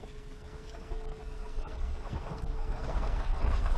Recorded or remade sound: remade